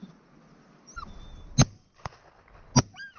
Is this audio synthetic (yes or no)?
no